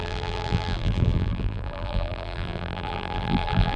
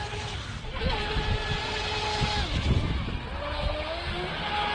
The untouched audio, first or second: second